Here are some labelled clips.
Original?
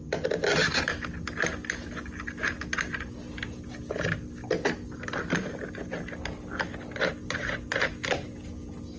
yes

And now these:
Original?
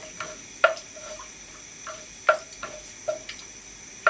no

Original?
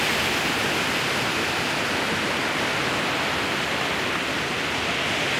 yes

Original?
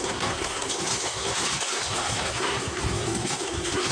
no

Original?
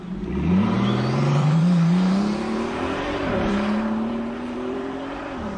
no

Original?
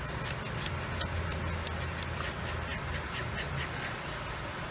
yes